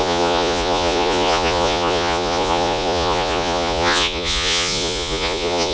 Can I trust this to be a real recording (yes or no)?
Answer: no